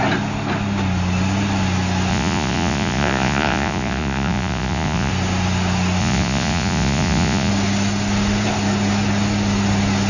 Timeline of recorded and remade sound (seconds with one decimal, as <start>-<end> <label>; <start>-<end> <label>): 0.0-2.1 recorded; 2.1-5.1 remade; 5.1-6.0 recorded; 6.0-7.5 remade; 7.5-10.1 recorded